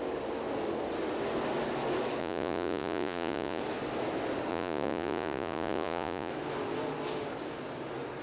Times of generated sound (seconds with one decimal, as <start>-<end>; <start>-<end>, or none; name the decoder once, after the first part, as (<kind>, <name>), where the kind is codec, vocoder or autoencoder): 2.2-3.6 (vocoder, Vocos); 4.5-6.3